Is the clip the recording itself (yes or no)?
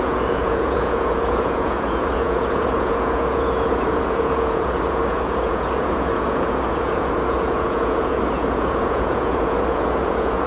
no